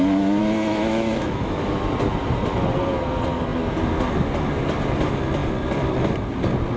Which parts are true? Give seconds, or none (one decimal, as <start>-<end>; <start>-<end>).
0.0-0.4; 1.8-6.8